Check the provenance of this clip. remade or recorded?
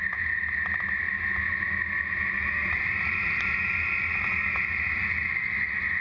recorded